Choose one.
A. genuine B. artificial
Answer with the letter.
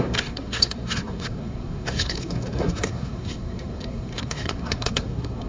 B